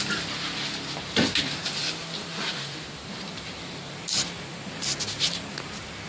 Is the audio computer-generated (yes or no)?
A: no